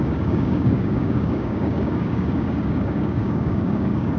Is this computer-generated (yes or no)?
yes